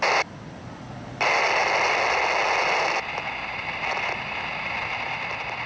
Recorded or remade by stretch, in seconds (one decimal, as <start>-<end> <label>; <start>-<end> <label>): 0.0-5.7 recorded